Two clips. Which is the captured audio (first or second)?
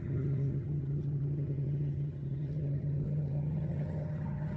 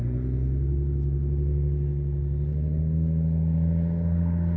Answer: second